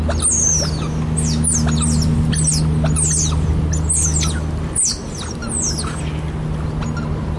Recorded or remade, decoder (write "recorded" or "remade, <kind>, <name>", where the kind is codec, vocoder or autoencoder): recorded